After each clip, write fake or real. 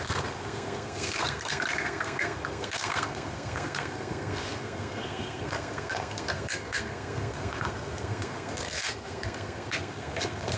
fake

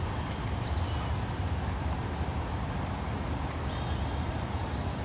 real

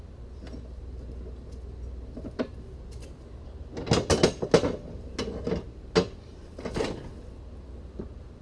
real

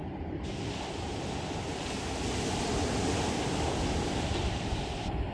real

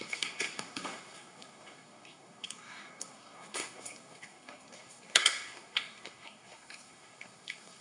fake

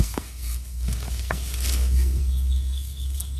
fake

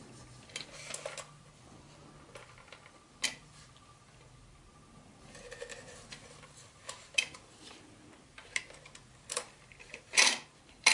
real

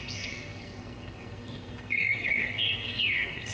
fake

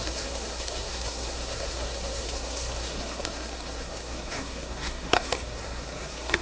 fake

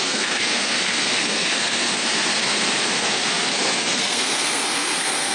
fake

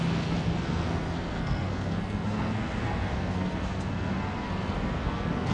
fake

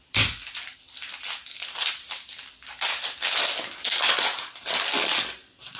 real